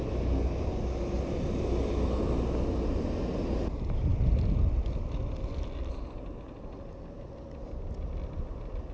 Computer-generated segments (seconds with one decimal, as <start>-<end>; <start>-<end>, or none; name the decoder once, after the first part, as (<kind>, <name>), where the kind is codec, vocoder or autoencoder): none